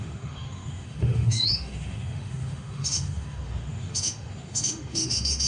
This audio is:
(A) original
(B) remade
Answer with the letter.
B